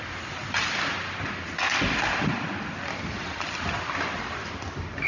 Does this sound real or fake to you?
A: real